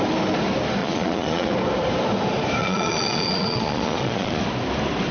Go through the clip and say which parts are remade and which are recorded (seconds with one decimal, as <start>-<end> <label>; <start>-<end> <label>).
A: 0.0-0.8 recorded; 0.8-1.5 remade; 1.5-2.6 recorded; 2.6-4.4 remade; 4.4-5.1 recorded

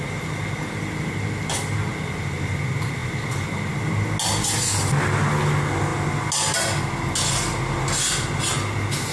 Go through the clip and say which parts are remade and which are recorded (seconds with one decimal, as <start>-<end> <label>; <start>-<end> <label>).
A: 0.0-9.1 recorded